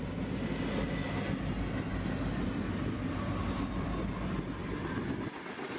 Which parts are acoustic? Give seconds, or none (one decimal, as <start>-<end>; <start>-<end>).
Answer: 0.0-5.8